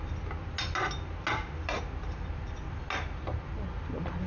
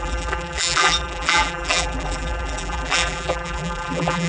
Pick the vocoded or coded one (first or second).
second